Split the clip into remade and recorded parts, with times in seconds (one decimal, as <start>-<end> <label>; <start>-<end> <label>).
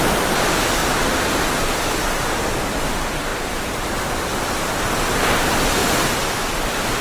0.0-0.8 recorded; 0.8-2.9 remade; 2.9-4.3 recorded; 4.3-5.3 remade; 5.3-7.0 recorded